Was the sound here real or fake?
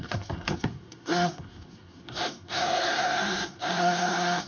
fake